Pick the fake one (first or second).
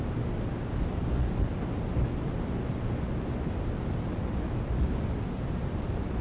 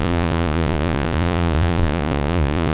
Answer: second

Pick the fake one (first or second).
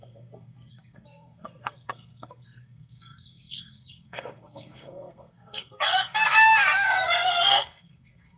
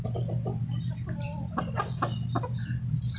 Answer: first